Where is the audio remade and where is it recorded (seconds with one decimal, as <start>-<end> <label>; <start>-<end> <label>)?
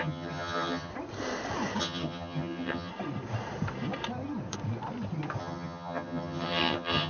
0.0-0.9 remade; 0.9-1.8 recorded; 1.8-2.9 remade; 2.9-5.4 recorded; 5.4-7.1 remade